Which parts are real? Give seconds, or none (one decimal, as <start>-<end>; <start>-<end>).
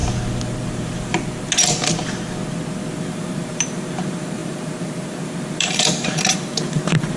0.0-3.0